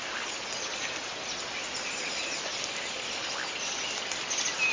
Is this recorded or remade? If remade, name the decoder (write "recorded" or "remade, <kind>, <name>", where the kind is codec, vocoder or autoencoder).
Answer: recorded